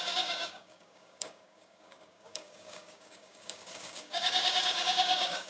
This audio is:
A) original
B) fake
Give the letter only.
B